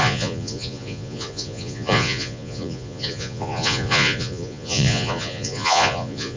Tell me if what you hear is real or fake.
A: fake